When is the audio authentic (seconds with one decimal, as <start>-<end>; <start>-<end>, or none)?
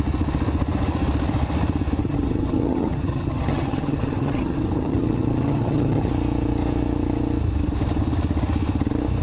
0.0-2.0; 6.1-9.2